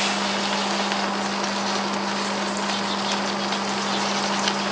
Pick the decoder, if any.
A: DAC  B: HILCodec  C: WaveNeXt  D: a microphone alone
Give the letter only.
D